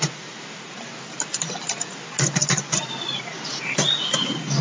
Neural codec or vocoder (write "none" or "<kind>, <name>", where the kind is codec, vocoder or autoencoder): none